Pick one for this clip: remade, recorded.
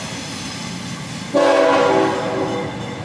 recorded